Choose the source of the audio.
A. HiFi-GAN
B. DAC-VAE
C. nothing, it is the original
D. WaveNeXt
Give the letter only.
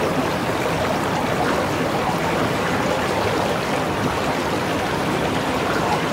C